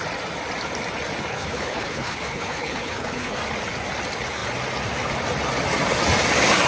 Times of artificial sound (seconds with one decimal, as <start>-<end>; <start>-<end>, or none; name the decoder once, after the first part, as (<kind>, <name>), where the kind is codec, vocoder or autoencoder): 1.3-3.4 (codec, HILCodec)